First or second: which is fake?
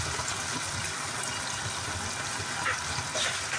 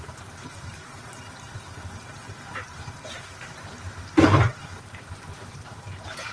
second